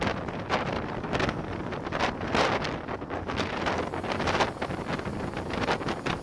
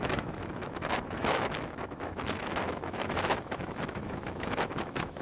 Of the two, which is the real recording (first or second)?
first